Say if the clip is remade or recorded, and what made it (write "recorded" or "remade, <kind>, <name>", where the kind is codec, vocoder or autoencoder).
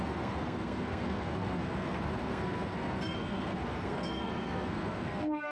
remade, codec, SNAC